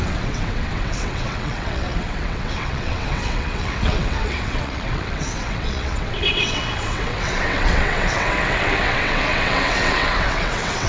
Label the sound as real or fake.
fake